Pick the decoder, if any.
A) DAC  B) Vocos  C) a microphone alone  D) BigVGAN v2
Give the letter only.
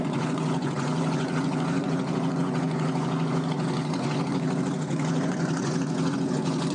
B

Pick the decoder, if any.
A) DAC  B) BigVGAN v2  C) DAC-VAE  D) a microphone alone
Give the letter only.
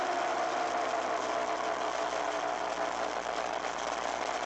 D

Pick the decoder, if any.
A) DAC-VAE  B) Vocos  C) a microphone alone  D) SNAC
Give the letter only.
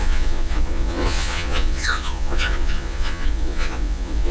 B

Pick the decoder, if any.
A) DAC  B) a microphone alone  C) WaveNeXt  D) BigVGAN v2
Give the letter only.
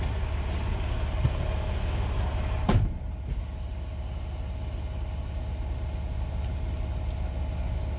B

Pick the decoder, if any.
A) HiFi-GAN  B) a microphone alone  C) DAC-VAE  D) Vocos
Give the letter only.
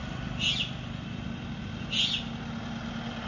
B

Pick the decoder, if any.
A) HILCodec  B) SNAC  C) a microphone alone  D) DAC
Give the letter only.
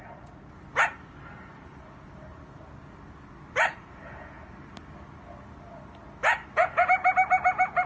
C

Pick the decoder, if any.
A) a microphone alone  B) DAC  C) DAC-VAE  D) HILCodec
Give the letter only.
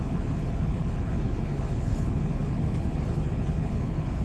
D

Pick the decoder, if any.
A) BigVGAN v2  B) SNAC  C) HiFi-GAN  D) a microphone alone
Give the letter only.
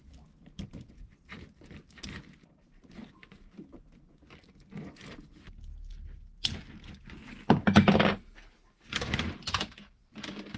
D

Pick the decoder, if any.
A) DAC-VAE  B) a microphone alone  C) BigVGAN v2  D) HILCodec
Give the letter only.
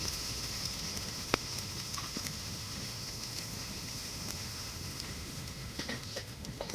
A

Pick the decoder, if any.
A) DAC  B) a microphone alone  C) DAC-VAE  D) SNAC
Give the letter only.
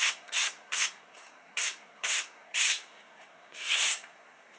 D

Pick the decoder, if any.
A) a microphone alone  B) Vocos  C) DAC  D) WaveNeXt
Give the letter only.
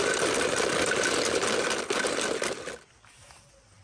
A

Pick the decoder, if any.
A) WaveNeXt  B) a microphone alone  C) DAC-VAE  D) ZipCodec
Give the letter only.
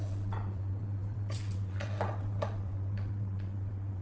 A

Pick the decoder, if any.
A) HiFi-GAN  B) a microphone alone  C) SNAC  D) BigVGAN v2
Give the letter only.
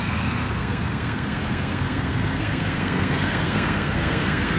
C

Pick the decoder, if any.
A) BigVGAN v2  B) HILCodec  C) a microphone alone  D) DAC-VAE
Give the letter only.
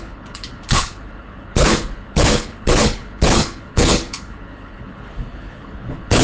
B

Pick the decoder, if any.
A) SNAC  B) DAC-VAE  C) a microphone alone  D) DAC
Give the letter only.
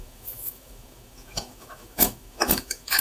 B